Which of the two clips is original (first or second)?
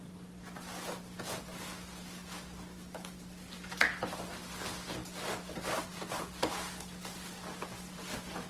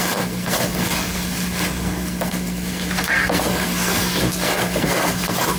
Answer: first